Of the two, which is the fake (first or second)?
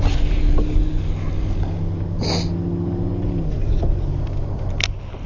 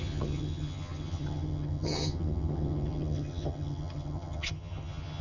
second